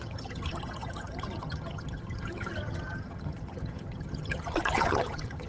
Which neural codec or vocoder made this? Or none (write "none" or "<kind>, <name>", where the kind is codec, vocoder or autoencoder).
vocoder, HiFi-GAN